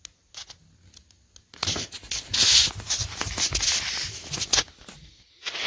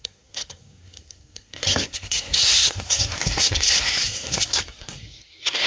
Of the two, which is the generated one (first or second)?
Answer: second